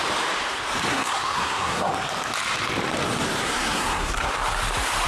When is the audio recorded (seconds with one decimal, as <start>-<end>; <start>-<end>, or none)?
0.0-0.9; 1.9-3.4; 4.3-5.1